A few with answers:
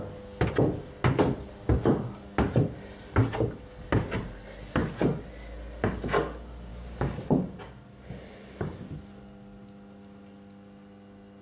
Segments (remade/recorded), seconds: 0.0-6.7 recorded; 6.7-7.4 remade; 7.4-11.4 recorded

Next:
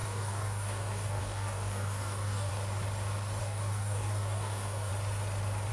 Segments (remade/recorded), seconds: 0.0-2.5 remade; 2.5-3.4 recorded; 3.4-4.9 remade; 4.9-5.7 recorded